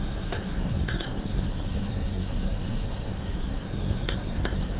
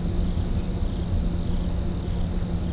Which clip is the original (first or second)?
second